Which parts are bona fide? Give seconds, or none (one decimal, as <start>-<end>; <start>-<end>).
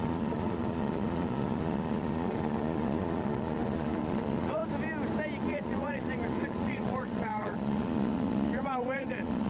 4.6-5.4